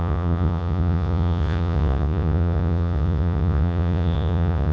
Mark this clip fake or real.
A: fake